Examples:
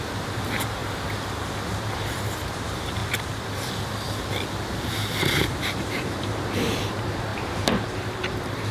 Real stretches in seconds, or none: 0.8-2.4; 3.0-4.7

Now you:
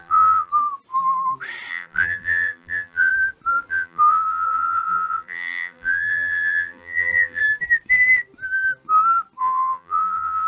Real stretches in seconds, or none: 0.5-1.7; 3.1-3.7; 7.4-9.4

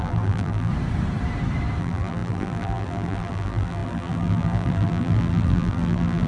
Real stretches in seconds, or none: 0.7-1.8

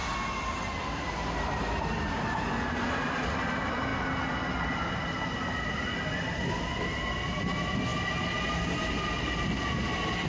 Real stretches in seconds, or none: 0.0-10.3

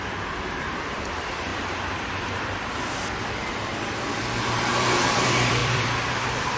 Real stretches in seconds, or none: none

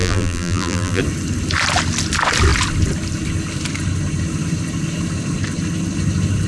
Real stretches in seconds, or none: 1.0-6.5

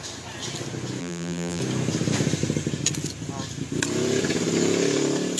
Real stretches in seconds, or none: 0.0-1.0; 1.6-5.4